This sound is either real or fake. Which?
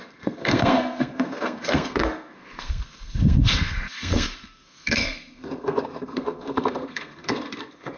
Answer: fake